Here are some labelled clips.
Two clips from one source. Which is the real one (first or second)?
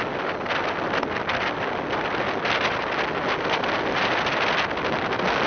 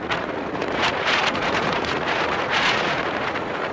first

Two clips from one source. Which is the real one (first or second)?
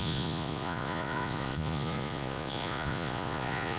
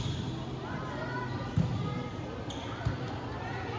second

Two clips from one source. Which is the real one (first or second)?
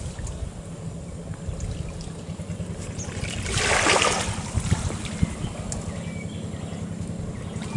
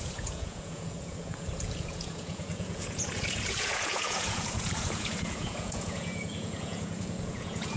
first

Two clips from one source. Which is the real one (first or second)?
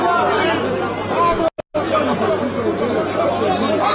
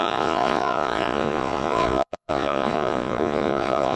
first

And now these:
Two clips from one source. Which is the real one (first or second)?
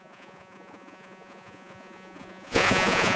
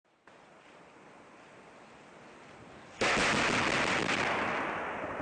second